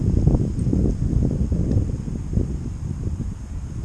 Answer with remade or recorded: recorded